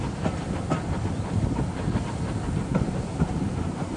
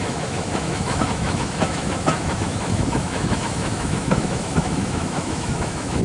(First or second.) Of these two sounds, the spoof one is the second